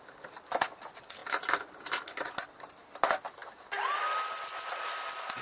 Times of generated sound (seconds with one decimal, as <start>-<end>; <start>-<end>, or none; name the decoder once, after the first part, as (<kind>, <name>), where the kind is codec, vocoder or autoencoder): none